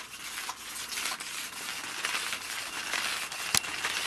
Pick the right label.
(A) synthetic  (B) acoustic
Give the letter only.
B